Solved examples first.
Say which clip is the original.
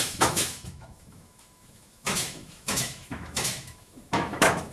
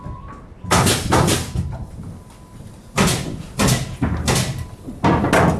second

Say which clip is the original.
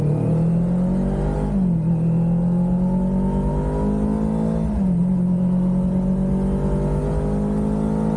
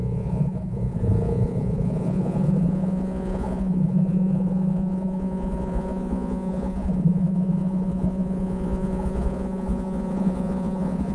first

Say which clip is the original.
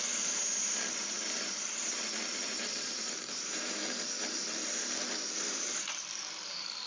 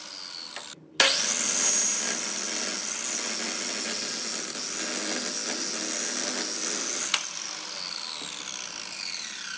second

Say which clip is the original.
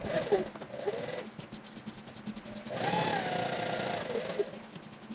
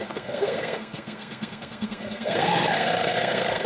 first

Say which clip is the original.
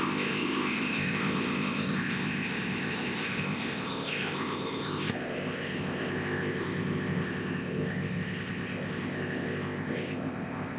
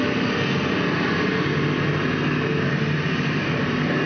second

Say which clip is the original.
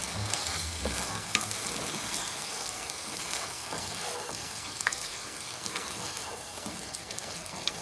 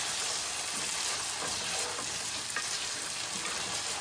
second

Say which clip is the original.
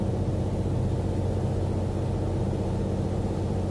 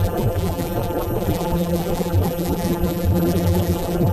first